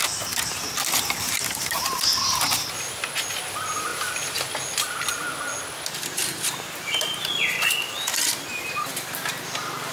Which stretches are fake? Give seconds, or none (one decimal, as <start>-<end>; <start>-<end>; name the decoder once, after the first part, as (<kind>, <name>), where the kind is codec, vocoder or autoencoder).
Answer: 6.2-7.3 (vocoder, BigVGAN v2)